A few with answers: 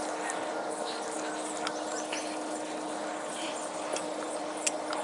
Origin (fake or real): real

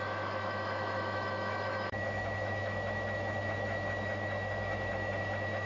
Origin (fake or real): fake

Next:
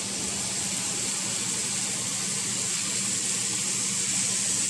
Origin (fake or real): real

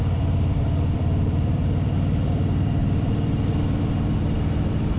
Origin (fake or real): fake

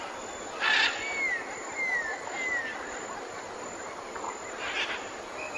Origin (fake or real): real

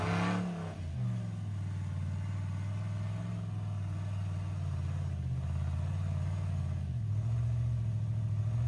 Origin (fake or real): real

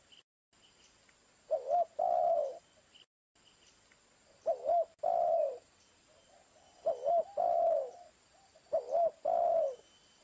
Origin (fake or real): real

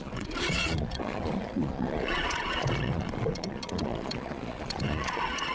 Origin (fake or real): fake